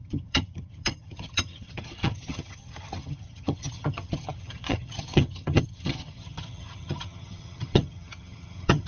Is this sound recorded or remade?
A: remade